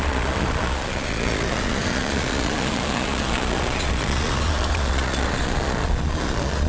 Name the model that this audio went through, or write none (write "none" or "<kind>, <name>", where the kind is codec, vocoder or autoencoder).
vocoder, Vocos